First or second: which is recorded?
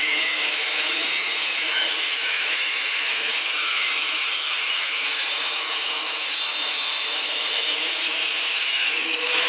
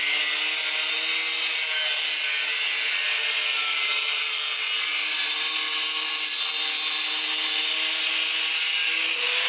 second